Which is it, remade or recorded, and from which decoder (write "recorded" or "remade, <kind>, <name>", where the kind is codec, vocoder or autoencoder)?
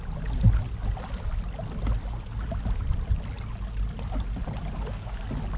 recorded